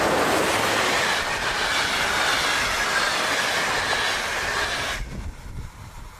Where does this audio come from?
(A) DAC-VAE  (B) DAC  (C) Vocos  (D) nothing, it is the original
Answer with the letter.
D